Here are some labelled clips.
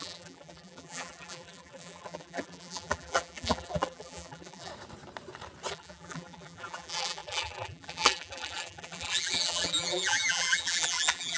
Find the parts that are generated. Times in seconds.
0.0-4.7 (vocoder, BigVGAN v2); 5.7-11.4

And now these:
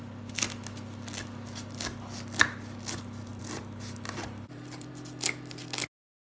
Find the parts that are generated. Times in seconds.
3.3-4.9 (vocoder, BigVGAN v2)